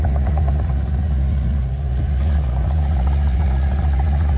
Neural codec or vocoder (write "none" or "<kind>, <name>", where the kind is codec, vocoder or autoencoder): vocoder, Vocos